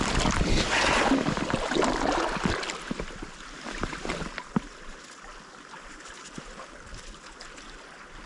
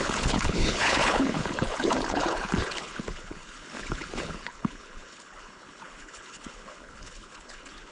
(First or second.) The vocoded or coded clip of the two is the second